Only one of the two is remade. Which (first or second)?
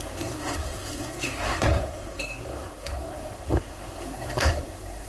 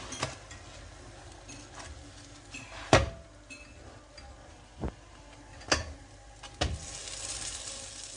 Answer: first